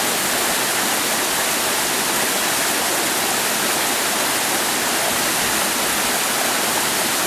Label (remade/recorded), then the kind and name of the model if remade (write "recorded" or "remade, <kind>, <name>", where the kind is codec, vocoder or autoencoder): recorded